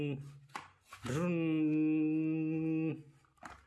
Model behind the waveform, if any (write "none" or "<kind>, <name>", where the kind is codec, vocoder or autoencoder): none